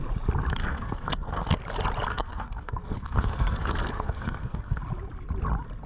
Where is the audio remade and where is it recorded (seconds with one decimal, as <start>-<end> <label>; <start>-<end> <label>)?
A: 0.0-0.6 recorded; 0.6-1.6 remade; 1.6-2.1 recorded; 2.1-4.8 remade; 4.8-5.9 recorded